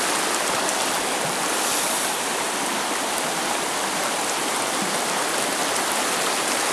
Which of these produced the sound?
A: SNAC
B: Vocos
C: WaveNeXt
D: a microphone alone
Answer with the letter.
D